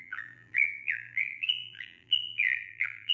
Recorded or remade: remade